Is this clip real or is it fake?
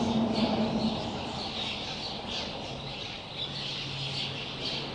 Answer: real